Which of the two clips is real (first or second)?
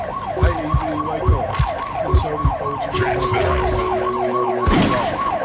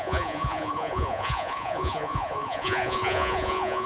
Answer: first